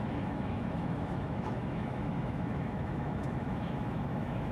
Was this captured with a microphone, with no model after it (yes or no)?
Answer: no